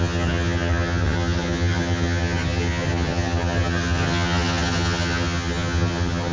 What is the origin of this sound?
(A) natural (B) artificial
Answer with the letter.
B